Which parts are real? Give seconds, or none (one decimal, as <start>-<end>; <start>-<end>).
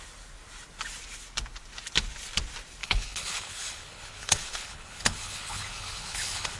0.0-2.8